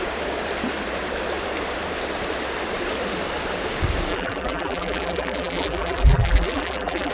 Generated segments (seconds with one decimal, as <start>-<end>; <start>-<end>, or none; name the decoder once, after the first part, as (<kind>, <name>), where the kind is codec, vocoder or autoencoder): 4.1-7.1 (vocoder, BigVGAN v2)